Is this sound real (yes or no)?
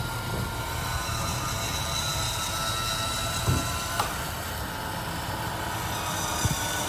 yes